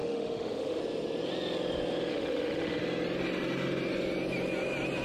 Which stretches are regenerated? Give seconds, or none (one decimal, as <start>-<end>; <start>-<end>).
0.0-0.8; 2.1-2.8